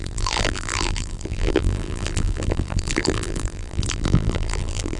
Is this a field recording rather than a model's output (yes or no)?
no